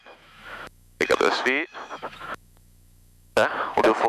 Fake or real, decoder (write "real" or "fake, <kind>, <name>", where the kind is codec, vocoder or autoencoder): fake, autoencoder, DAC-VAE